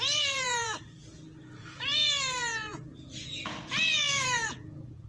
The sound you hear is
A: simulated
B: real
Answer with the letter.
A